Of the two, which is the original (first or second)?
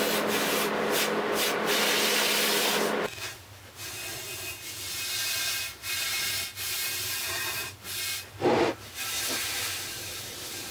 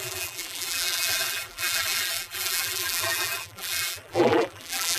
first